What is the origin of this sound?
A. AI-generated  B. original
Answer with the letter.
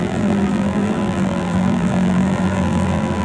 A